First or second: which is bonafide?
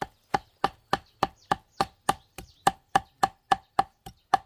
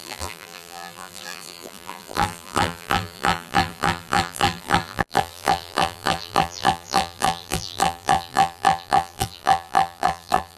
first